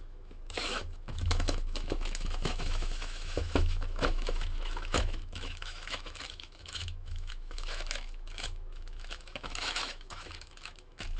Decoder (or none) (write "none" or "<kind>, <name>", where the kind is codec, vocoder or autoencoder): autoencoder, DAC-VAE